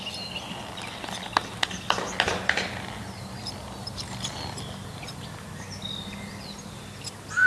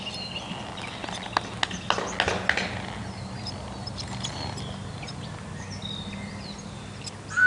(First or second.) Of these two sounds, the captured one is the second